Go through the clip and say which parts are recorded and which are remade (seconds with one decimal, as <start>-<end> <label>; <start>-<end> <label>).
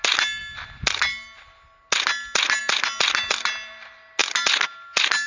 0.0-5.3 recorded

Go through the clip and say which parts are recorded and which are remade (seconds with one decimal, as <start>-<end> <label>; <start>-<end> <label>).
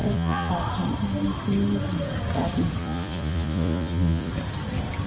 0.0-0.5 remade; 0.5-2.8 recorded; 2.8-4.3 remade; 4.3-5.1 recorded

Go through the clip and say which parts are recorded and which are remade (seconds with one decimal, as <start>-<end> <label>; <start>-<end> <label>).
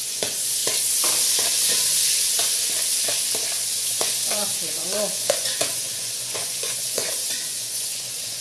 0.0-0.6 remade; 0.6-3.8 recorded; 3.8-8.4 remade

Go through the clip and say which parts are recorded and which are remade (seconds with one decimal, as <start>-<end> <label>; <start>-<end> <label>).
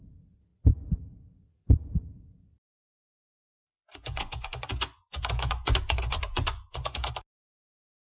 0.0-3.6 recorded; 3.6-7.1 remade; 7.1-8.2 recorded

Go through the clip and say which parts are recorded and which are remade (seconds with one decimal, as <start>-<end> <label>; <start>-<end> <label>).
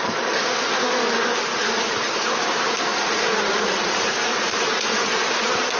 0.0-1.6 recorded; 1.6-2.1 remade; 2.1-2.9 recorded; 2.9-5.1 remade; 5.1-5.8 recorded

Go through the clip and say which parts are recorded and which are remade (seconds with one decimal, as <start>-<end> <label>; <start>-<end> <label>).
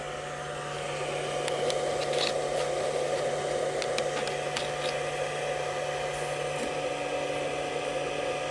0.0-8.5 recorded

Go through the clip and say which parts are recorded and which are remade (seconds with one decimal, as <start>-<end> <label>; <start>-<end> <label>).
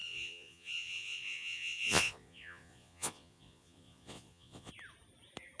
0.0-4.7 remade; 4.7-5.6 recorded